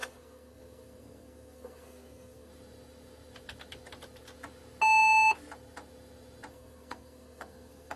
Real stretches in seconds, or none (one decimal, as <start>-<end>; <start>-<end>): 2.5-6.5